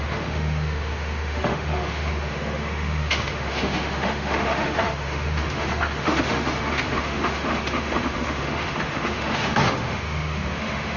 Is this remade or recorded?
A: remade